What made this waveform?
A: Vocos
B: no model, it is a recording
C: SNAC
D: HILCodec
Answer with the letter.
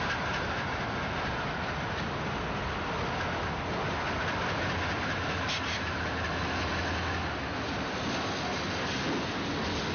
B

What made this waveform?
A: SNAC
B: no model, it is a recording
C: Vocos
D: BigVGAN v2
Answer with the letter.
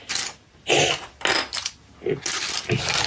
B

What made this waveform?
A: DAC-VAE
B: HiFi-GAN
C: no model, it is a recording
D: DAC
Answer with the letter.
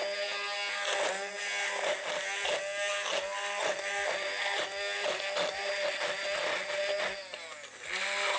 C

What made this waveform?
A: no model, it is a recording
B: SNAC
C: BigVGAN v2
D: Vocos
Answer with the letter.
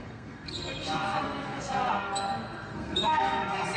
B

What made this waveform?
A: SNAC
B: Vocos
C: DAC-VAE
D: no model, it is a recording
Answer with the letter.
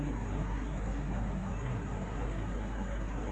A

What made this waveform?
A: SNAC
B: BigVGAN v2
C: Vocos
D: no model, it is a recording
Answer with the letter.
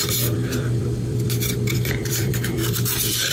B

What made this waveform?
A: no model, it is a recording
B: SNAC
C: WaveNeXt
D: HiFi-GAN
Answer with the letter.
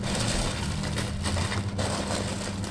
A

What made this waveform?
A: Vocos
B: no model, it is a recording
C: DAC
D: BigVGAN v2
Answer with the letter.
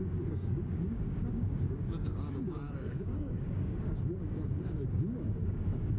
C